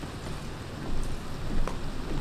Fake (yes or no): no